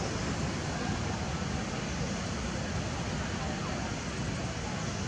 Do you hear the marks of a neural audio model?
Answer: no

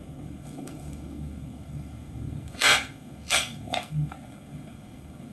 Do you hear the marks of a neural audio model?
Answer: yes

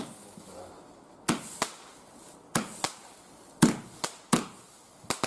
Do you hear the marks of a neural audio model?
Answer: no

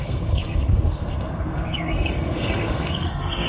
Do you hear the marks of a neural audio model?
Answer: yes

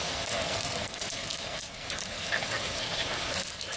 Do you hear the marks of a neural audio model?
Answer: yes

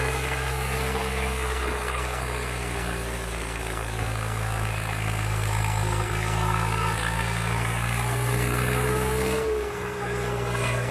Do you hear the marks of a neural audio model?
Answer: yes